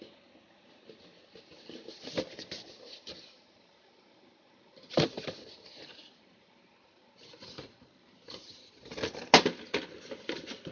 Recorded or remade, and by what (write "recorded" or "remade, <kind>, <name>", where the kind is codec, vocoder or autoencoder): recorded